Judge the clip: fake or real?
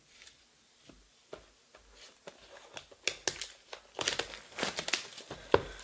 real